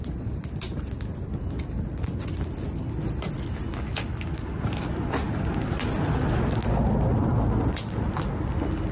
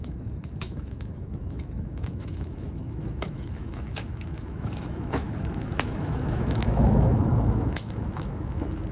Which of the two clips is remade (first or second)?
second